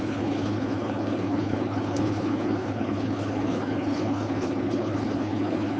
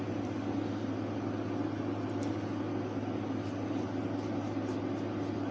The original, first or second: second